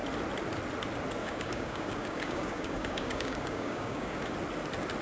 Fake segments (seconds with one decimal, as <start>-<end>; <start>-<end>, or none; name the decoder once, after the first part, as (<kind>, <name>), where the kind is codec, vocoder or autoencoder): 1.2-4.2 (codec, DAC)